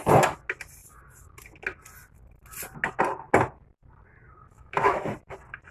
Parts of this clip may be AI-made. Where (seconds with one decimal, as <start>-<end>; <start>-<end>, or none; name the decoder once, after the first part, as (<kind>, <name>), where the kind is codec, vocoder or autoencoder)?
4.5-5.1 (autoencoder, DAC-VAE)